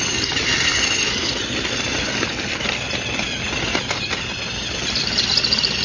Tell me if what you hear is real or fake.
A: fake